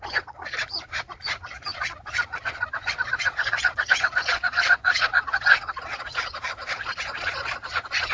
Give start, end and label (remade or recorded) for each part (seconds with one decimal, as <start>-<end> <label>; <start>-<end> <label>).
0.0-8.1 remade